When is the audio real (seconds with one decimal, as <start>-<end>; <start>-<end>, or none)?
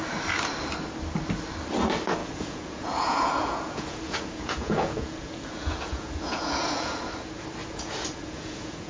0.0-2.2; 7.1-7.6